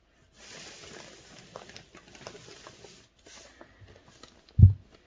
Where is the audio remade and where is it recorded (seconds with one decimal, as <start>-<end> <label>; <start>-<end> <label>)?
0.0-5.1 recorded